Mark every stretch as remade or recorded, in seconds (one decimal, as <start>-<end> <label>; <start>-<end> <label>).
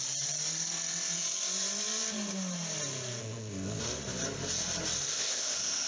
0.0-3.2 recorded; 3.2-3.8 remade; 3.8-5.1 recorded; 5.1-5.9 remade